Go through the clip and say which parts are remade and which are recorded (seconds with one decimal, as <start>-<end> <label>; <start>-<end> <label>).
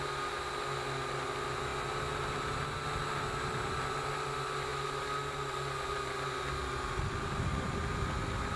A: 0.0-8.6 recorded